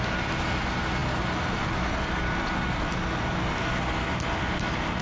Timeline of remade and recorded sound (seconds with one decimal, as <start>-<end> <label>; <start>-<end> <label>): 0.0-5.0 recorded